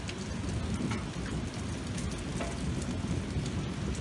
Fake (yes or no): no